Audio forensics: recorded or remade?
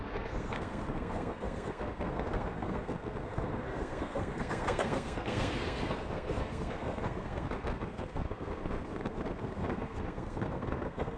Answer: remade